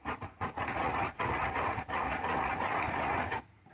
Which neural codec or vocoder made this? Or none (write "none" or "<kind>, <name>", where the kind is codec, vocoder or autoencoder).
vocoder, Vocos